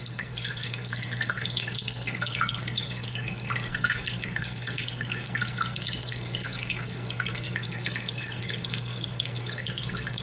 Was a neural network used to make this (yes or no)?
yes